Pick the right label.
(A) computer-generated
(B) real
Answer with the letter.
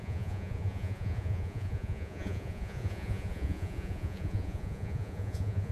A